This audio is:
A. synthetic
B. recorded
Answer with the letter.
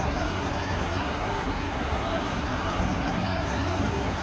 A